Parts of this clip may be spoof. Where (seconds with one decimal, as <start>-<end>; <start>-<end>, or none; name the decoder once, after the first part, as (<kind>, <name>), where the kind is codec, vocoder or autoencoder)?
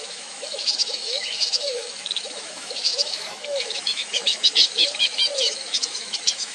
0.0-6.5 (autoencoder, DAC-VAE)